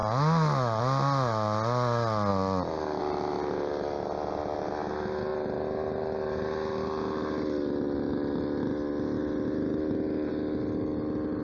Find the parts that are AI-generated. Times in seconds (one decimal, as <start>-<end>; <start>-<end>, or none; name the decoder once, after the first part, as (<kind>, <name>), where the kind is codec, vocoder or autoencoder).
none